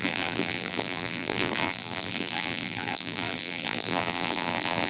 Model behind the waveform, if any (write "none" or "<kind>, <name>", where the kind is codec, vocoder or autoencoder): vocoder, BigVGAN v2